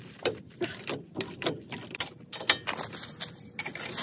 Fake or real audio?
fake